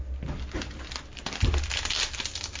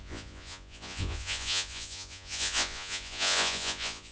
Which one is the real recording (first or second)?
first